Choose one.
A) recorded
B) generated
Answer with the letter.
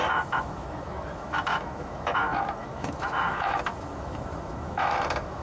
B